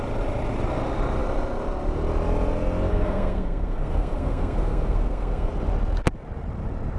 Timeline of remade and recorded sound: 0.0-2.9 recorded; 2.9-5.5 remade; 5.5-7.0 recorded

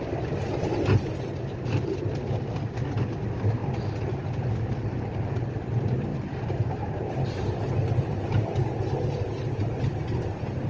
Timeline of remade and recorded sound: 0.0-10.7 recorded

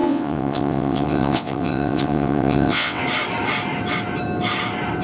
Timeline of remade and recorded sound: 0.0-3.0 remade; 3.0-5.0 recorded

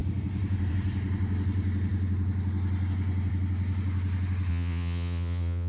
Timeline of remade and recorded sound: 0.0-4.5 recorded; 4.5-5.7 remade